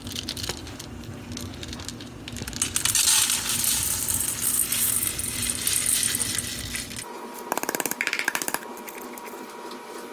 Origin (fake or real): real